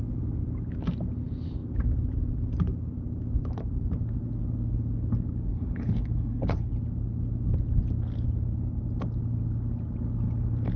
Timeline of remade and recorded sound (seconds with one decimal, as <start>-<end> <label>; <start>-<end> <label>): 0.0-5.5 recorded; 5.5-6.7 remade; 6.7-10.8 recorded